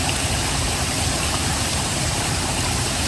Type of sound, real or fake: fake